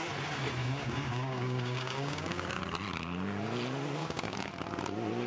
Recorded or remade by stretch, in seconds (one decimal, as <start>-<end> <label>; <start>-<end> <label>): 0.0-0.6 recorded; 0.6-2.6 remade; 2.6-4.0 recorded; 4.0-4.5 remade; 4.5-5.3 recorded

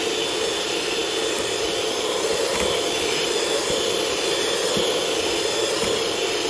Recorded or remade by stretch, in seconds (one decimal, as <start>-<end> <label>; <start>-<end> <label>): 0.0-6.5 recorded

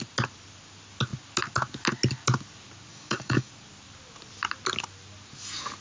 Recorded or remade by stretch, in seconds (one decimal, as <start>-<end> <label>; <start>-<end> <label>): 0.0-2.9 recorded; 2.9-3.5 remade; 3.5-5.8 recorded

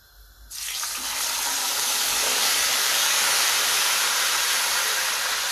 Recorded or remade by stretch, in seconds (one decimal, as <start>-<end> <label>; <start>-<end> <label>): 0.0-1.6 recorded; 1.6-3.5 remade; 3.5-5.5 recorded

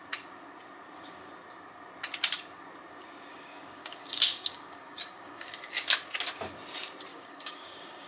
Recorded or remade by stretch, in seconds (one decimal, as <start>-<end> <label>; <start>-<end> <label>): 0.0-3.3 recorded; 3.3-5.5 remade; 5.5-7.1 recorded; 7.1-8.1 remade

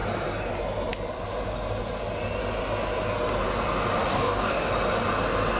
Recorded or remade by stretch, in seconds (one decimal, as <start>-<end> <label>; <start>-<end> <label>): 0.0-4.1 recorded; 4.1-4.7 remade; 4.7-5.6 recorded